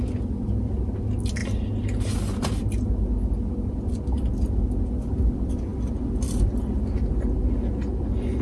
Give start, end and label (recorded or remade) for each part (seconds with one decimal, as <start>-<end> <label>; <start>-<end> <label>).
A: 0.0-8.4 recorded